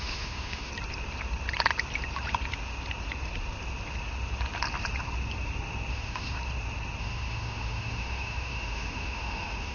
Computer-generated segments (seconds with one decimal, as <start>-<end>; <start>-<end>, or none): 0.0-0.7; 5.9-6.4; 7.0-9.7